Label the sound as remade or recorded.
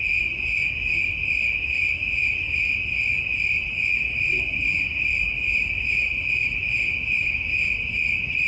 recorded